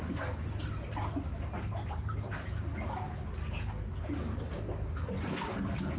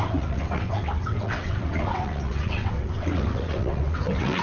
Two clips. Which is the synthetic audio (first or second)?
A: second